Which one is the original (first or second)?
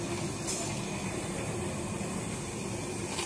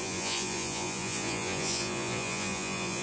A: first